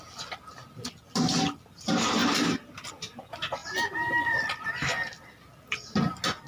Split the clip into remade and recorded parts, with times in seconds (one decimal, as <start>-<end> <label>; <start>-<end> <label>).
0.0-6.5 recorded